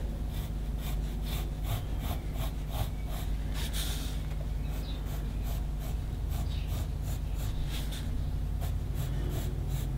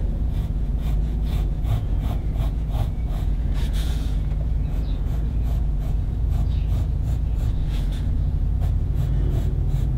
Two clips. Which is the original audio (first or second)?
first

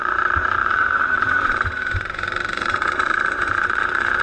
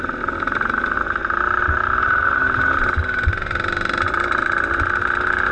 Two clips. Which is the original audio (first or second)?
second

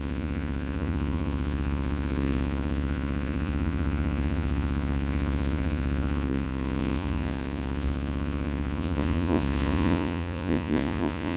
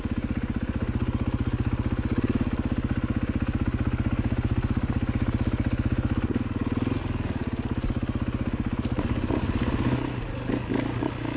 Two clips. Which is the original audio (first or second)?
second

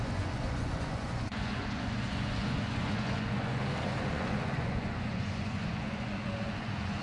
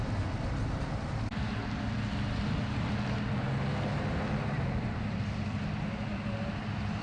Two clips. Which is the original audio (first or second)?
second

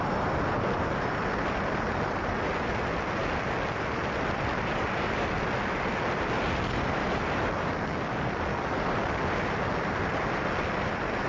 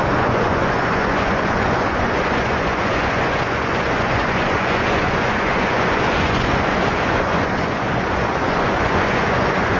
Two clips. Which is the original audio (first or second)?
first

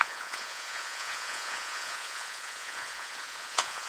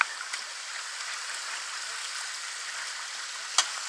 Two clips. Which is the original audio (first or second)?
second